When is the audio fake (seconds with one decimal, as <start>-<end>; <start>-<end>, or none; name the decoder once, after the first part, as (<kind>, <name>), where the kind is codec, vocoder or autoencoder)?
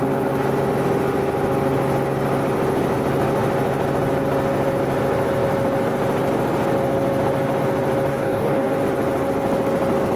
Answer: 8.1-8.7 (codec, DAC)